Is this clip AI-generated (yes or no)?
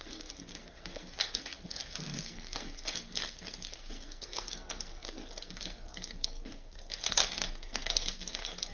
yes